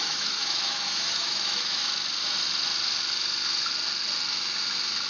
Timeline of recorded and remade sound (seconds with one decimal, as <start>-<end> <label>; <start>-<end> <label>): 0.0-1.8 remade; 1.8-5.1 recorded